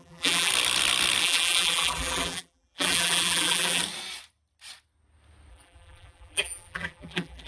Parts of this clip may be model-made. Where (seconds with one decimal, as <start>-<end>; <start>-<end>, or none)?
0.0-0.5; 1.2-3.8; 5.5-7.5